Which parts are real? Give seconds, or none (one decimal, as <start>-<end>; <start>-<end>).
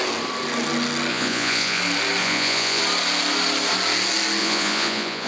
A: 0.0-1.1; 1.8-2.2; 2.8-4.4